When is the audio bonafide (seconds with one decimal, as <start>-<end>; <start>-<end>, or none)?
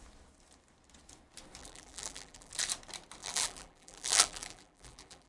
0.0-1.6; 2.5-3.2